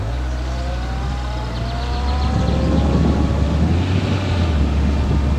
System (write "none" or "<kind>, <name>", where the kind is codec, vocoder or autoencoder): none